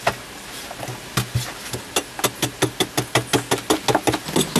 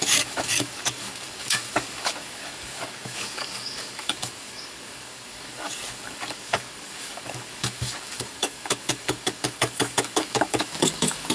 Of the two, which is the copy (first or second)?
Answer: second